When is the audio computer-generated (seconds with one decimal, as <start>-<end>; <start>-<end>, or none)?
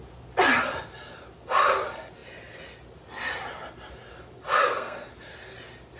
4.6-5.1